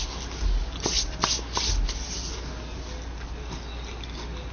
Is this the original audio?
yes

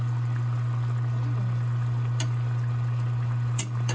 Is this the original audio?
yes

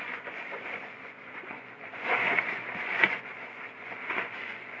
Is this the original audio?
no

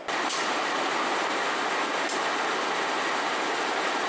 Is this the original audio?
yes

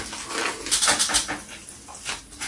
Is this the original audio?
yes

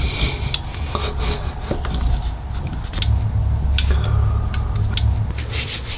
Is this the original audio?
yes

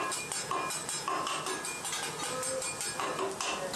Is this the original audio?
yes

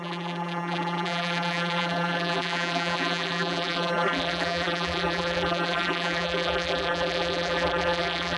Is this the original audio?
no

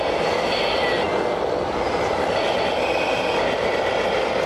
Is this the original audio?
yes